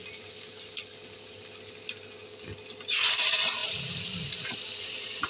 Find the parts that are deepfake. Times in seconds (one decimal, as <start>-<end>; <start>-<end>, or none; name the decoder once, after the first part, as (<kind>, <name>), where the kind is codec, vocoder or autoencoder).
3.2-5.3 (vocoder, BigVGAN v2)